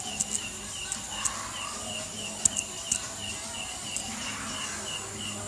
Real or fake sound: real